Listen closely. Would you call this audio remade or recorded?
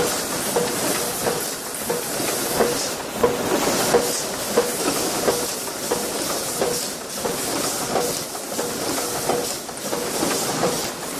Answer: recorded